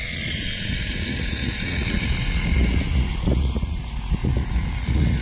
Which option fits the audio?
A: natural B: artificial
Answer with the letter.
B